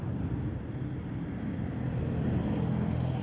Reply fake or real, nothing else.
real